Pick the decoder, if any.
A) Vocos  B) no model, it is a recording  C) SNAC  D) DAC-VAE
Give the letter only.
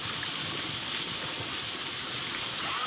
B